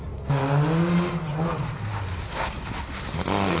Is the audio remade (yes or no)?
no